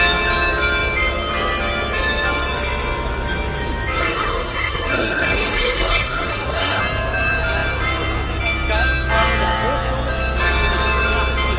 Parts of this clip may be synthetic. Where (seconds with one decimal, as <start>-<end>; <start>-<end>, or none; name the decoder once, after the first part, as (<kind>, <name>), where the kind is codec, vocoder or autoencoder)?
4.0-6.8 (codec, SNAC)